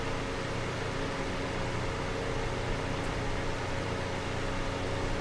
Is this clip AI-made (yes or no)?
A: no